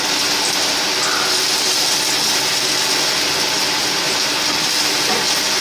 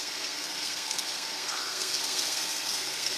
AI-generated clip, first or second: second